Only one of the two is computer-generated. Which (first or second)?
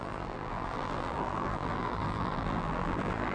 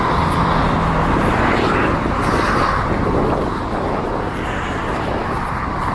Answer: first